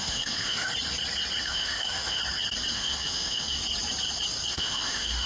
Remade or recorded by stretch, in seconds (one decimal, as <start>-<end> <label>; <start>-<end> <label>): 0.0-0.7 remade; 0.7-1.4 recorded; 1.4-2.2 remade; 2.2-2.7 recorded; 2.7-3.6 remade; 3.6-4.5 recorded; 4.5-5.3 remade